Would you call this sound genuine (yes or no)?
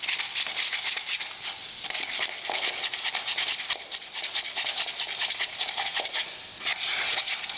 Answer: yes